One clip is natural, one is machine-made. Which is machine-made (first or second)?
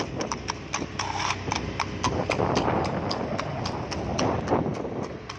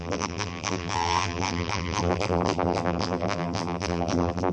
second